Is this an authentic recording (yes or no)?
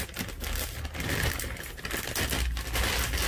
yes